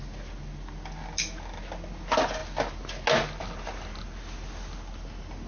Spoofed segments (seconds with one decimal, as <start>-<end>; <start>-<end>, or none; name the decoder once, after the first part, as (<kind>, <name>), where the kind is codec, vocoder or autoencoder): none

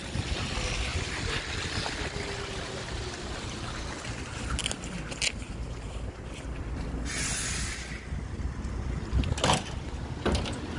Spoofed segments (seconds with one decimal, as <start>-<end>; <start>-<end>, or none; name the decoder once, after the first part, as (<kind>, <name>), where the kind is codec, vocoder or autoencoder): none

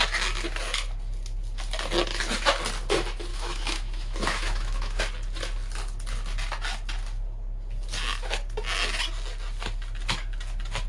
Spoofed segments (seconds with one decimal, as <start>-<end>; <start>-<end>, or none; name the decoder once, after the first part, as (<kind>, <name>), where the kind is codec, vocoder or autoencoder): 3.3-5.0 (autoencoder, DAC-VAE)